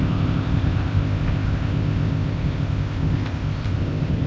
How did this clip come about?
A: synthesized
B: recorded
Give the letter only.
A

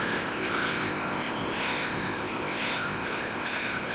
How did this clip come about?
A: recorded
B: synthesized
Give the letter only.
B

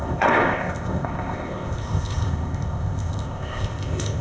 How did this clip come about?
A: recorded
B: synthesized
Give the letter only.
B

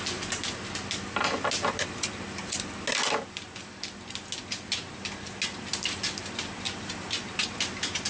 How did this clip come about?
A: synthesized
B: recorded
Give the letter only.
B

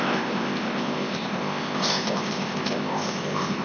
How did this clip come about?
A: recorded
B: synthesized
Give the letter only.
B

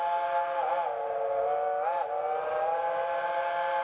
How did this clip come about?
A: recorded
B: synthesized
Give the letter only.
A